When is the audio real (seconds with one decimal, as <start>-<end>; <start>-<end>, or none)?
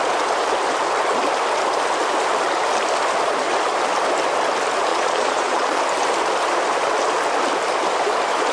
0.0-4.9; 5.8-8.5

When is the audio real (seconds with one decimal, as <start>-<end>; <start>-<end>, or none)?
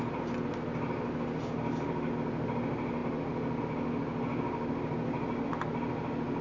0.0-6.4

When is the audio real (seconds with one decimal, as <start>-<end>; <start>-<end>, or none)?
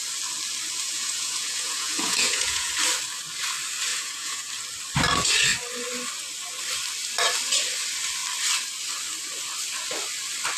0.0-0.8; 2.7-3.9; 4.5-10.6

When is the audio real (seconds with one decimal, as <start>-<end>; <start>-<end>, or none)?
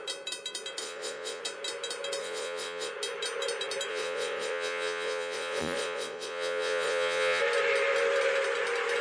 0.0-0.8; 1.4-2.2; 2.9-3.9; 7.4-9.0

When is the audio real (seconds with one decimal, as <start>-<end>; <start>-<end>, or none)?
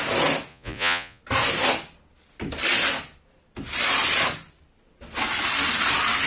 0.0-0.5; 1.2-6.3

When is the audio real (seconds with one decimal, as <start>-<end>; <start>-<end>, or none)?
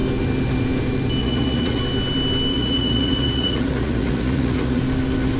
0.0-1.2; 1.8-2.5; 4.8-5.4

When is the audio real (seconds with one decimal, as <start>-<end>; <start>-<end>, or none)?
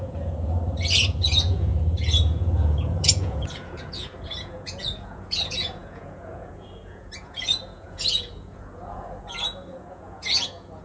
none